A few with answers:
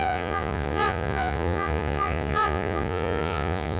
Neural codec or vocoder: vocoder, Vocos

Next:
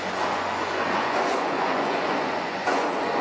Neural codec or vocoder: vocoder, Vocos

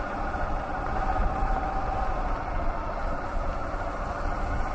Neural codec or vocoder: none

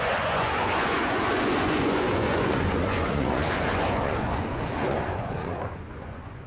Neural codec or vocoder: vocoder, Vocos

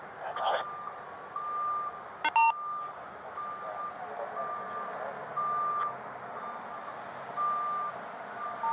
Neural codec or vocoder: none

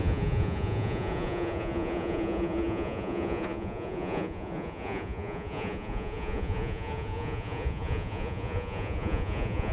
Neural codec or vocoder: vocoder, Vocos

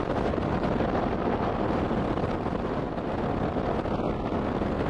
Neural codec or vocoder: none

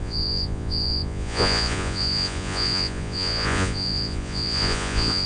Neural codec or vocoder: vocoder, Vocos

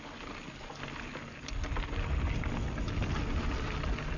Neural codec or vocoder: none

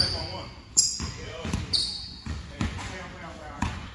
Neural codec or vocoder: vocoder, Vocos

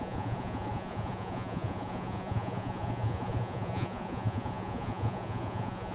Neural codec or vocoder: vocoder, Vocos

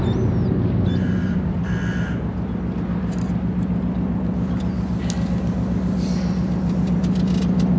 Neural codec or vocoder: none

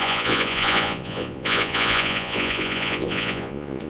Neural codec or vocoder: vocoder, Vocos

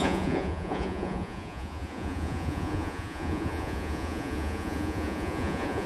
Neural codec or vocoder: vocoder, Vocos